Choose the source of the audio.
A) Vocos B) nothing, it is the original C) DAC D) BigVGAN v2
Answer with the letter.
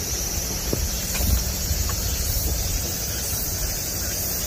D